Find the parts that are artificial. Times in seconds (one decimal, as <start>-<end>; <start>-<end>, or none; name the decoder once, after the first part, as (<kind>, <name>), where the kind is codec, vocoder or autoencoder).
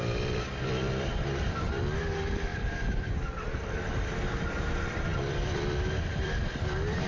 0.0-7.1 (vocoder, BigVGAN v2)